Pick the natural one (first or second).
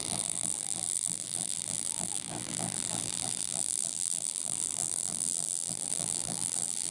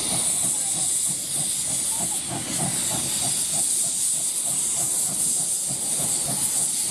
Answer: second